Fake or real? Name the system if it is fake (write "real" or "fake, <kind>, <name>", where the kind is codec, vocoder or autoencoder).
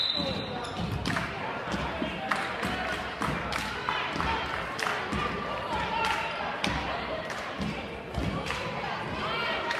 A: real